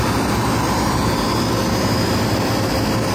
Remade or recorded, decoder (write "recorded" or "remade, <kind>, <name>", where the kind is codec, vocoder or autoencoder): recorded